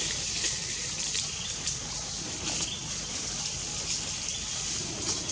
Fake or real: real